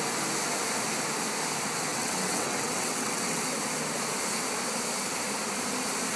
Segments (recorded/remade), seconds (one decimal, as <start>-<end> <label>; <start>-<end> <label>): 0.0-1.9 recorded; 1.9-3.4 remade; 3.4-6.2 recorded